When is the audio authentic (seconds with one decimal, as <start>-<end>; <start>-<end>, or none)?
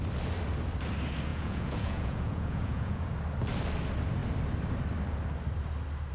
0.0-1.3; 3.1-6.1